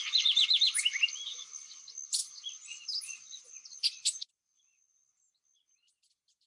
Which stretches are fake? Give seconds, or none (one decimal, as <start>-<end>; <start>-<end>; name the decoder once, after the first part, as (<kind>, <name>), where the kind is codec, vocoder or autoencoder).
none